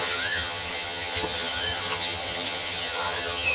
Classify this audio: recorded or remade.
remade